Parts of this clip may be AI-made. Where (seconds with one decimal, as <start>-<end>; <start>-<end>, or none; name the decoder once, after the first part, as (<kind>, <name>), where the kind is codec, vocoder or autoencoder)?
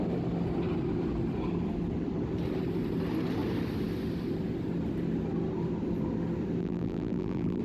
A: 6.6-7.6 (vocoder, BigVGAN v2)